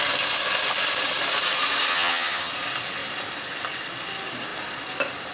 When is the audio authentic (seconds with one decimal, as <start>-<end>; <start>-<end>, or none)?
0.0-1.9; 2.5-5.3